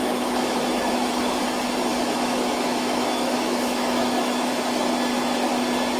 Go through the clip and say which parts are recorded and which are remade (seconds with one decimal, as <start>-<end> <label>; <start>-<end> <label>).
0.0-1.4 remade; 1.4-1.9 recorded; 1.9-4.5 remade; 4.5-6.0 recorded